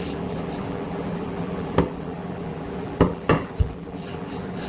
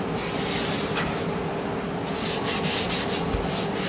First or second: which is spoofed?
first